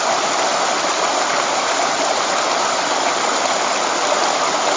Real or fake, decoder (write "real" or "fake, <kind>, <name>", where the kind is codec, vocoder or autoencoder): real